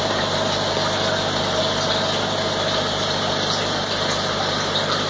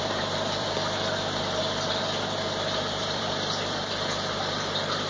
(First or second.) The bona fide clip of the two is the first